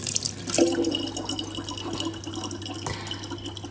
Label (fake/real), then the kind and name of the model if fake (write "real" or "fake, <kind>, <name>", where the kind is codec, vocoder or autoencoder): real